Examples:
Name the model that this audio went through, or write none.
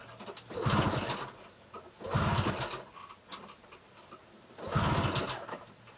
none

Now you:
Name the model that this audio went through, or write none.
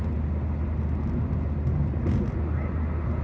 none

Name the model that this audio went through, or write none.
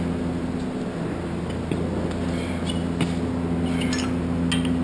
none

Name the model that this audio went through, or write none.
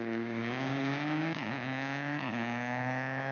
codec, DAC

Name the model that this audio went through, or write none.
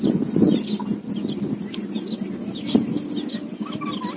none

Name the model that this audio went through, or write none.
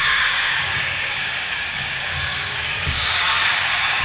codec, DAC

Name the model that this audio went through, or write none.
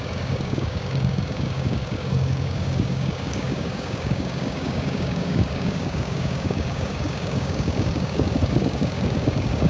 codec, DAC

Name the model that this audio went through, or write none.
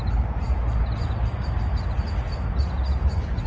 none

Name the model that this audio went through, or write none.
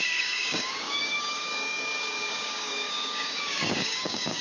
codec, DAC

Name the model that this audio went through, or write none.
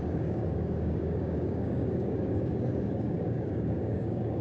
codec, DAC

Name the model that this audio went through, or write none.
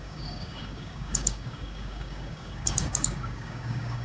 codec, DAC